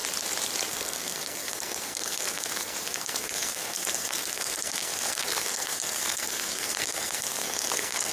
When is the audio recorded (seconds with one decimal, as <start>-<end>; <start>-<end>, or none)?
0.0-0.7